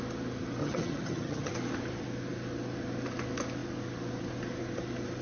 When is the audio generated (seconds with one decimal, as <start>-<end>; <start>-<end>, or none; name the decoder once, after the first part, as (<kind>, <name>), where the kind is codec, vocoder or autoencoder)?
0.6-1.5 (vocoder, HiFi-GAN)